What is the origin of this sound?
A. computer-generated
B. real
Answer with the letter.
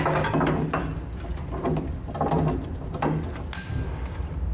B